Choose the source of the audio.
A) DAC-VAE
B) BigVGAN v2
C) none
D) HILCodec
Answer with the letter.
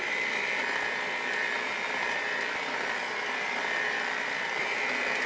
C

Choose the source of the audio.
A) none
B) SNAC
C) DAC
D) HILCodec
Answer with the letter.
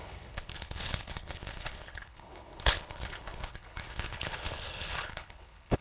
D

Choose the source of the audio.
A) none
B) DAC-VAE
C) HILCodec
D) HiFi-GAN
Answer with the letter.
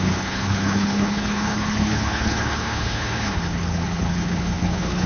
C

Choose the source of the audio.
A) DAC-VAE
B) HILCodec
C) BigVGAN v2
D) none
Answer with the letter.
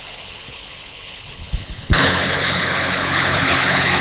B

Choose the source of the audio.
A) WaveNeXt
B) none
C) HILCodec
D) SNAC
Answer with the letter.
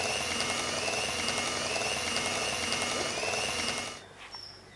B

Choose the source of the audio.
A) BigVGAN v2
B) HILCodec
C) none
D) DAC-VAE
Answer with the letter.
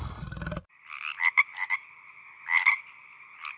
C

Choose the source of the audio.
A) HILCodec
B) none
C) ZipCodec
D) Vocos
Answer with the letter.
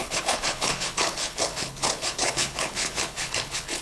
A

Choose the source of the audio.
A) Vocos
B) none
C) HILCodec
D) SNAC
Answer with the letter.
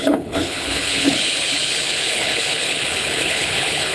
C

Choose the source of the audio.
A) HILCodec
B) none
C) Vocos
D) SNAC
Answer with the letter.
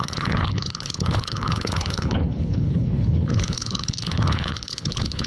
A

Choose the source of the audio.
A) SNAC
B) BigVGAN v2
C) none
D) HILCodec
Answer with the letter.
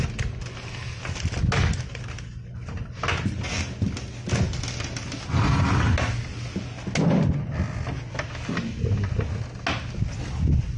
C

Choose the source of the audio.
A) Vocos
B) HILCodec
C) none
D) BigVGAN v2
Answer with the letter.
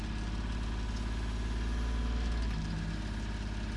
C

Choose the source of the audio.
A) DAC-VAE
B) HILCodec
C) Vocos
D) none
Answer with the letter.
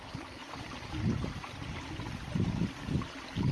D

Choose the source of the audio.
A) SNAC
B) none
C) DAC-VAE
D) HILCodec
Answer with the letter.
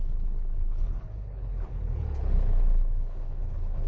D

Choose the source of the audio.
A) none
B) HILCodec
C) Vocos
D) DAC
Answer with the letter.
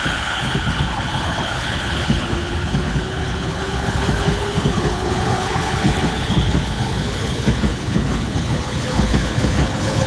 B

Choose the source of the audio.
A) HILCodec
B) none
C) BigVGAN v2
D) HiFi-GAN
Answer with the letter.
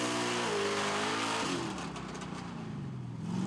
B